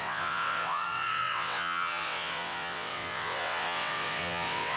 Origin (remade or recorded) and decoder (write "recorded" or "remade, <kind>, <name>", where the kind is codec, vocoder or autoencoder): remade, vocoder, WaveNeXt